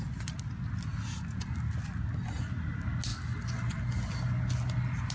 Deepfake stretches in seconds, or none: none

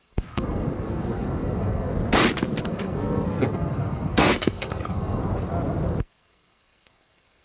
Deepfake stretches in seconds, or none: 0.0-1.9 (codec, SNAC); 2.6-5.2; 6.0-7.4

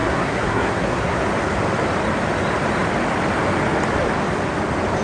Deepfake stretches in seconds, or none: 0.0-1.2 (codec, SNAC)

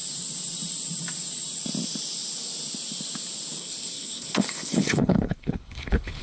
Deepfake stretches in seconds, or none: 3.6-6.2 (codec, HILCodec)